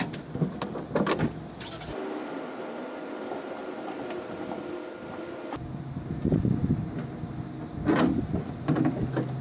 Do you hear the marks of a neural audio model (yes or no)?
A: no